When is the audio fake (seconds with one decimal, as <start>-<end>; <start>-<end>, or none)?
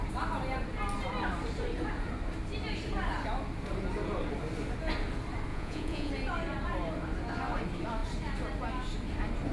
5.5-6.1